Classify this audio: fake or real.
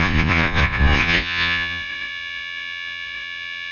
fake